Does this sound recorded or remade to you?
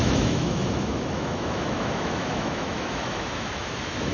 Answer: remade